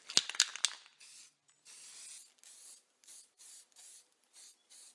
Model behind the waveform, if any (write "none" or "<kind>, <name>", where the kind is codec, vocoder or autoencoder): none